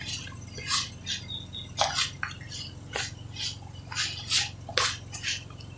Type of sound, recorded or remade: recorded